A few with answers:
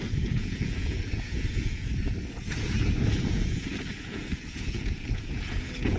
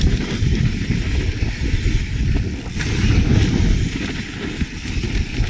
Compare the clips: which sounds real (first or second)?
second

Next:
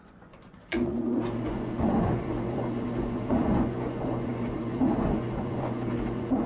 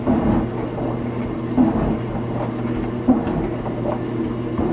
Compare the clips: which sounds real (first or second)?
second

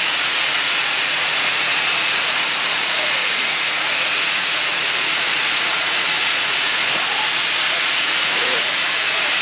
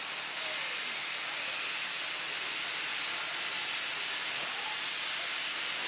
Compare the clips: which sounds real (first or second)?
second